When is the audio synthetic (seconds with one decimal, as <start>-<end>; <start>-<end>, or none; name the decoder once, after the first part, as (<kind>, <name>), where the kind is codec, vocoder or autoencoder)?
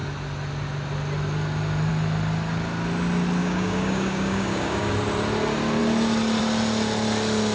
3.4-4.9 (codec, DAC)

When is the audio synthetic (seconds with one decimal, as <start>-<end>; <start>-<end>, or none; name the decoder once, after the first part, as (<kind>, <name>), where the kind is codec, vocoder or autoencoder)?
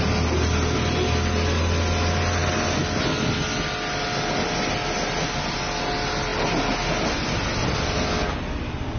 none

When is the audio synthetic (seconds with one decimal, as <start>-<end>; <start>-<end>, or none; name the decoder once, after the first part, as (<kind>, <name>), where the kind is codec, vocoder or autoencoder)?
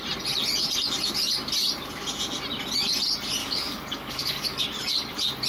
3.4-4.6 (codec, DAC)